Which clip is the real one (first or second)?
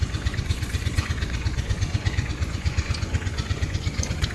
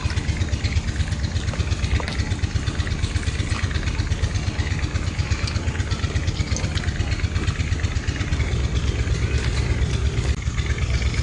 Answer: second